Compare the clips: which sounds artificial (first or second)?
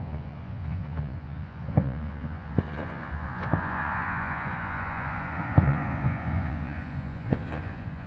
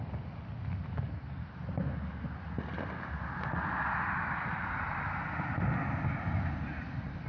first